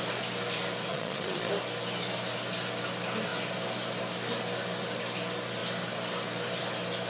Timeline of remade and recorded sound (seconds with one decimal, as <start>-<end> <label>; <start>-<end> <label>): 0.0-0.9 recorded; 0.9-1.5 remade; 1.5-7.1 recorded